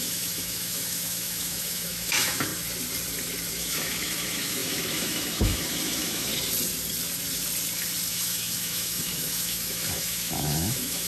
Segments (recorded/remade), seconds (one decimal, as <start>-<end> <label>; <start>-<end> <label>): 0.0-2.5 remade; 2.5-3.5 recorded; 3.5-6.3 remade; 6.3-8.1 recorded; 8.1-11.1 remade